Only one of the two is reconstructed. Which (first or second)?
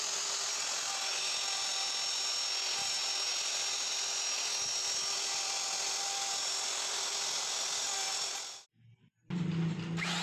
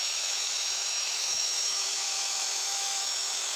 second